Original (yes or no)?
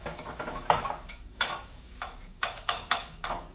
no